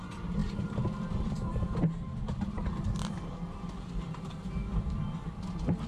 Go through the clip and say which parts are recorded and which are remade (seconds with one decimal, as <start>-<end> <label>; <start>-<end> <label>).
0.0-5.9 recorded